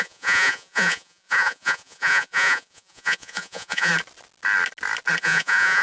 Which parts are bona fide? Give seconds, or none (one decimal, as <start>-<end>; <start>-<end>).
3.9-5.2